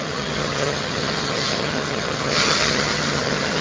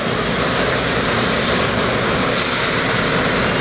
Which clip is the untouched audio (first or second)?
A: second